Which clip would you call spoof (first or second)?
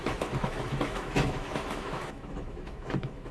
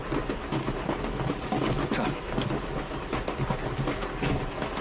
first